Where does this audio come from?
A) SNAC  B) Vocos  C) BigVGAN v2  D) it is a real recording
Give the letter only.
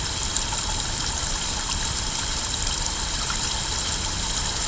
C